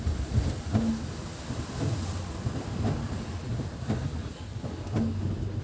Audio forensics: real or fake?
real